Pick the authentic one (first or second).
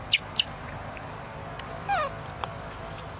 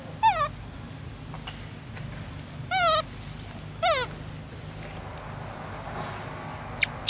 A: second